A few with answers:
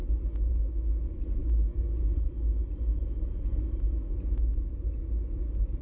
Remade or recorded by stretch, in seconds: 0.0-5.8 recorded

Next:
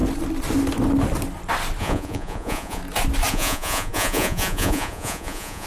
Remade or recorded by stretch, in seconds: 0.0-1.8 recorded; 1.8-2.8 remade; 2.8-3.3 recorded; 3.3-5.7 remade